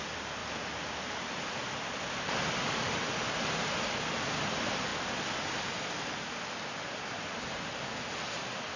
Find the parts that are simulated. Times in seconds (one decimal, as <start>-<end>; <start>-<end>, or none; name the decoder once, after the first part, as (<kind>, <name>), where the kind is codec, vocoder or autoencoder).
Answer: 0.4-2.1 (vocoder, BigVGAN v2)